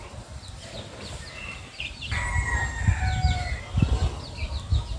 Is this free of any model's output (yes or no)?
yes